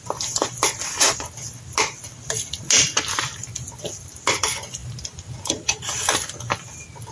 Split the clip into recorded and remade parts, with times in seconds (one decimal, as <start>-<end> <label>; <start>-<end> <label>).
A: 0.0-7.1 recorded